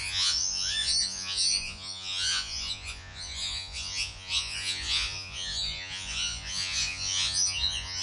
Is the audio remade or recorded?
remade